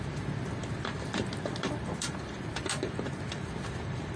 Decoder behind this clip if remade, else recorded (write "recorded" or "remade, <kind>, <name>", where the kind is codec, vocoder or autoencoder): remade, vocoder, BigVGAN v2